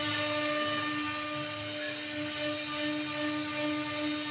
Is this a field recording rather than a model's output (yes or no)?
yes